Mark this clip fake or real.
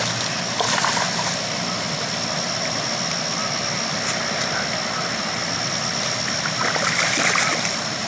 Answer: real